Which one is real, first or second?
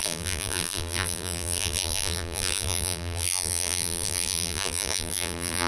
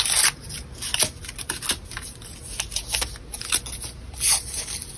second